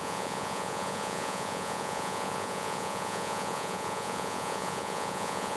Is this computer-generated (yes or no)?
yes